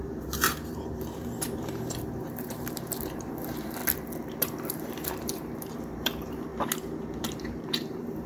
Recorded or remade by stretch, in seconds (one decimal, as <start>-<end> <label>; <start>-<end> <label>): 0.0-3.8 remade; 3.8-4.7 recorded; 4.7-6.5 remade; 6.5-7.2 recorded; 7.2-8.3 remade